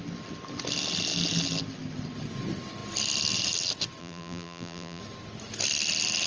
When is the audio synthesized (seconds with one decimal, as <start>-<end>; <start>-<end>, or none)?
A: 4.0-5.0